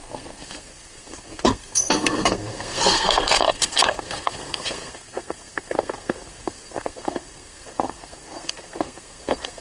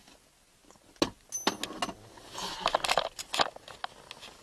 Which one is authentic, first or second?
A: second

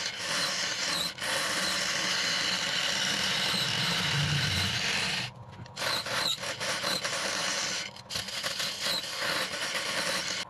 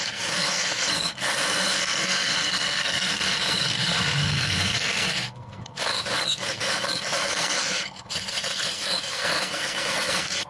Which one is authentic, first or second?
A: first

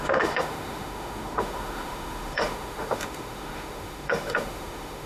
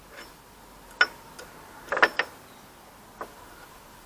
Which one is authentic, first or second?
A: second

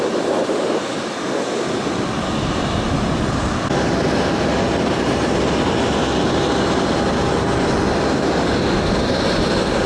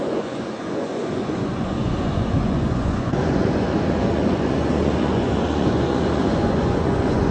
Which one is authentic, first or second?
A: first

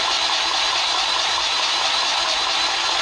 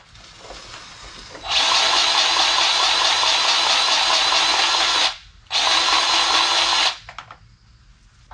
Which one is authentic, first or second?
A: second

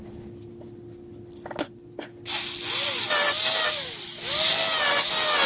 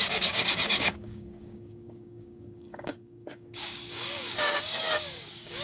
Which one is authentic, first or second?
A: first